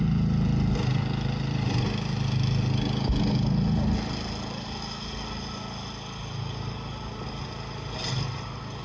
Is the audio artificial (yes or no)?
no